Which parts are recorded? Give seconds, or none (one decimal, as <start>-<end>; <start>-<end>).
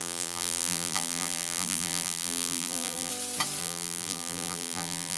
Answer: 3.1-3.6